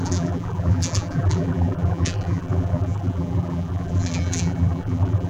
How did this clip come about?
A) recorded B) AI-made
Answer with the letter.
B